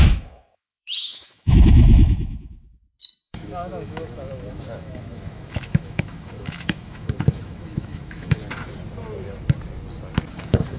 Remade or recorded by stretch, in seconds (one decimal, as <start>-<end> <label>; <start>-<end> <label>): 0.0-8.4 remade; 8.4-10.3 recorded; 10.3-10.8 remade

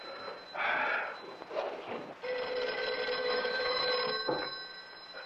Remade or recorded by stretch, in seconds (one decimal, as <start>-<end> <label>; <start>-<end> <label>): 0.0-3.2 recorded; 3.2-3.8 remade; 3.8-5.3 recorded

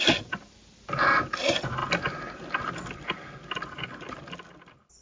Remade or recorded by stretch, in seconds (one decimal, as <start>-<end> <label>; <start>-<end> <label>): 0.0-5.0 recorded

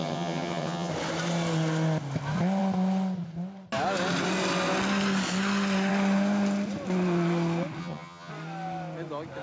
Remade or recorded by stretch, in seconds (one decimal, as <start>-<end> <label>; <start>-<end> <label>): 0.0-0.9 remade; 0.9-7.8 recorded; 7.8-8.3 remade; 8.3-9.4 recorded